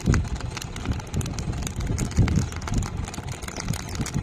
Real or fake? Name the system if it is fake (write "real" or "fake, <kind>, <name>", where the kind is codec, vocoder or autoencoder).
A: real